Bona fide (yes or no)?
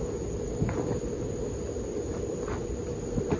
yes